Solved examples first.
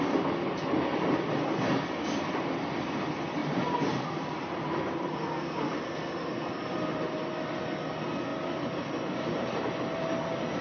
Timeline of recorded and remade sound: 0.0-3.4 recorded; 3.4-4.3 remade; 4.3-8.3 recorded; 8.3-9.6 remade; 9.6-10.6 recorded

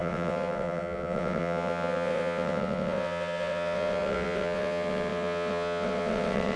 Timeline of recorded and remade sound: 0.0-6.6 remade

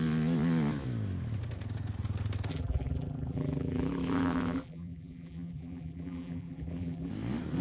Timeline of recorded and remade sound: 0.0-2.5 recorded; 2.5-7.1 remade; 7.1-7.6 recorded